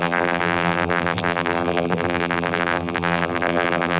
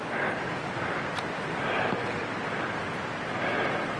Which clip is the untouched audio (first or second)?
second